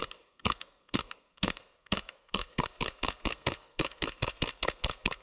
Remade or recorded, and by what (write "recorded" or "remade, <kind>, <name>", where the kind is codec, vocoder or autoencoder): remade, codec, SNAC